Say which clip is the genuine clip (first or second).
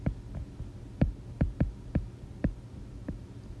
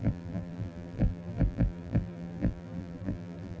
first